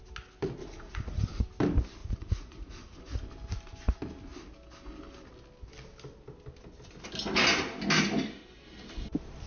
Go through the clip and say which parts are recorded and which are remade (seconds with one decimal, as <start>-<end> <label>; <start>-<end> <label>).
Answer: 0.0-0.6 recorded; 0.6-1.4 remade; 1.4-2.0 recorded; 2.0-3.0 remade; 3.0-9.5 recorded